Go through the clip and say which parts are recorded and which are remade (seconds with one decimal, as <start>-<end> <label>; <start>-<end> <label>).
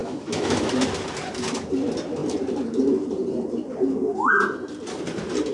0.0-0.7 remade; 0.7-5.5 recorded